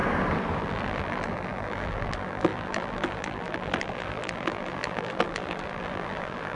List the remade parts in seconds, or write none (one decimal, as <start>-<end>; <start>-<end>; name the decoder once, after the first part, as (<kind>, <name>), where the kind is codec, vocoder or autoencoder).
0.6-6.5 (vocoder, BigVGAN v2)